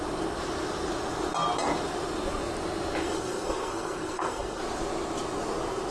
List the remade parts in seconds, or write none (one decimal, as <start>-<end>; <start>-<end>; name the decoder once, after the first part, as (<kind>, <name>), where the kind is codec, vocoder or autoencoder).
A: 3.0-4.6 (codec, SNAC)